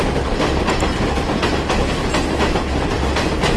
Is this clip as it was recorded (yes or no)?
yes